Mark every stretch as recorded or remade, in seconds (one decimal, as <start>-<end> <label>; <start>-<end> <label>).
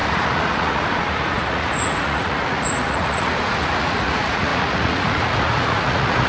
0.0-6.3 remade